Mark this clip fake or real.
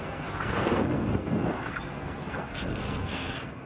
fake